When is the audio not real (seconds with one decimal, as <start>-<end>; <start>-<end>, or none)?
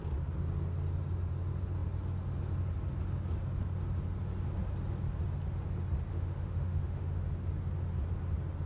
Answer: 6.1-7.2